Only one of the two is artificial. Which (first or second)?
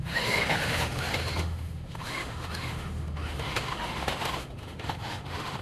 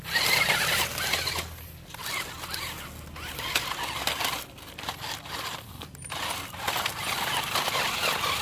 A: first